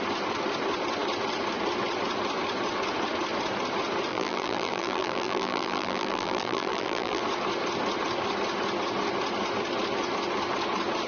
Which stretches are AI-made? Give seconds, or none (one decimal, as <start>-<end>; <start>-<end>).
4.1-7.2